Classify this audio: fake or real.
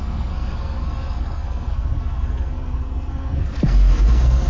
fake